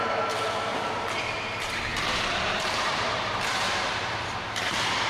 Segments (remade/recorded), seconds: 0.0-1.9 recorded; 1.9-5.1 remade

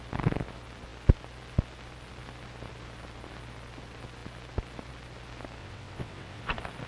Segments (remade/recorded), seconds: 0.0-5.6 recorded; 5.6-6.4 remade; 6.4-6.9 recorded

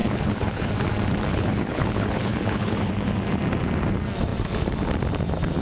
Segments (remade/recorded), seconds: 0.0-0.7 remade; 0.7-1.3 recorded; 1.3-2.9 remade; 2.9-5.6 recorded

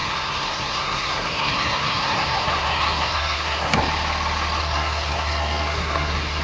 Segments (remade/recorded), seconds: 0.0-3.8 remade; 3.8-4.6 recorded; 4.6-6.4 remade

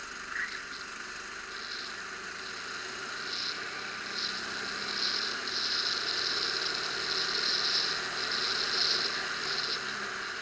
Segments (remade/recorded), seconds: 0.0-10.4 recorded

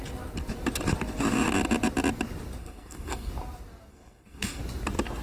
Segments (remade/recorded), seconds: 0.0-2.6 recorded; 2.6-3.3 remade; 3.3-3.9 recorded; 3.9-4.6 remade; 4.6-5.2 recorded